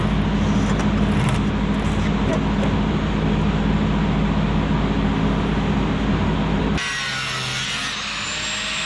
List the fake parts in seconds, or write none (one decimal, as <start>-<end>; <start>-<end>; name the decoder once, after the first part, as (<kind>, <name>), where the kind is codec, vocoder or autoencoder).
none